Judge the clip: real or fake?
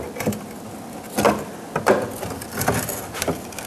real